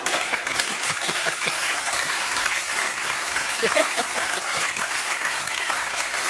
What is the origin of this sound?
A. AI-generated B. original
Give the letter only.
A